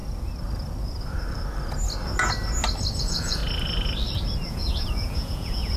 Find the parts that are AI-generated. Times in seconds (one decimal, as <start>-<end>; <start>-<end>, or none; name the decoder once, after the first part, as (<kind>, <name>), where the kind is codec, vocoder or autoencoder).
3.0-3.4 (vocoder, Vocos); 4.5-5.8